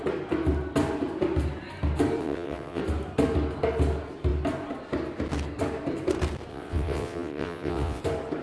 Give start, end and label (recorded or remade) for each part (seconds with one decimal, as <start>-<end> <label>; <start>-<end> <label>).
0.0-2.2 recorded; 2.2-2.8 remade; 2.8-6.5 recorded; 6.5-8.0 remade; 8.0-8.4 recorded